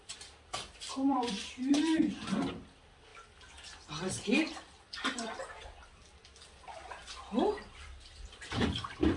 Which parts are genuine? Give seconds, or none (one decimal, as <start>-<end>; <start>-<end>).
3.1-4.8; 6.2-7.2